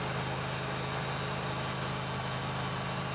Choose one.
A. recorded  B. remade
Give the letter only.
A